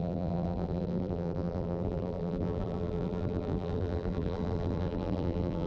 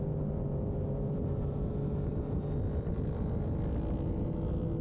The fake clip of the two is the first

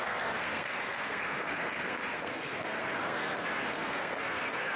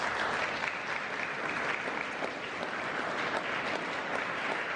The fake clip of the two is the first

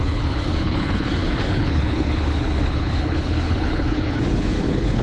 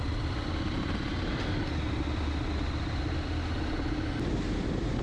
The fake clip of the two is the first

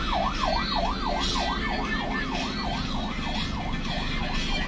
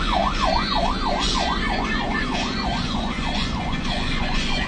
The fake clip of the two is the second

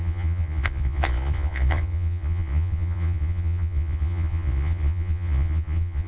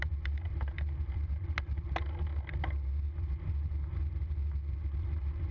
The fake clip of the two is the first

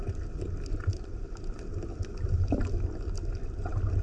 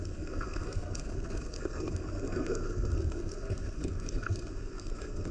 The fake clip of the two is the second